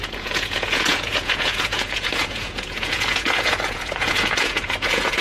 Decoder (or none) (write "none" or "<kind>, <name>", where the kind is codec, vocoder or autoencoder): vocoder, Vocos